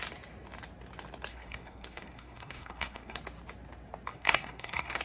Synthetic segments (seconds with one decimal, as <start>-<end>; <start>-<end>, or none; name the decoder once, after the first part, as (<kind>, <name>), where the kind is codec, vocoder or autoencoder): 1.3-3.2 (codec, SNAC); 4.1-5.0